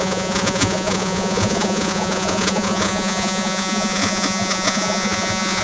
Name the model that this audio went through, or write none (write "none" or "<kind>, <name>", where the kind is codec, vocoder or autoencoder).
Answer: vocoder, Vocos